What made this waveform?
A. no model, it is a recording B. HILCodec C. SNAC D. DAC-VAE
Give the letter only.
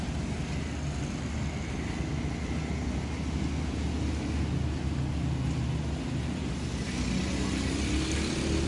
A